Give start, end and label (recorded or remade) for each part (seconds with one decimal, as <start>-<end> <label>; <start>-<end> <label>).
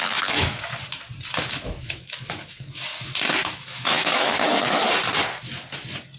0.0-0.7 remade; 0.7-1.3 recorded; 1.3-2.9 remade; 2.9-3.5 recorded; 3.5-4.8 remade; 4.8-6.2 recorded